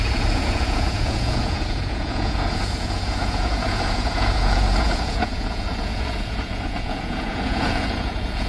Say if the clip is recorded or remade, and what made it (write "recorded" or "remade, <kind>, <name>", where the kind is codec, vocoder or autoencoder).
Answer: remade, vocoder, Vocos